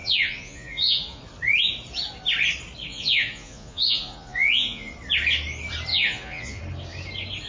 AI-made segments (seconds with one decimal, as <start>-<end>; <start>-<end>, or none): 0.0-1.2; 2.9-4.9; 5.9-6.6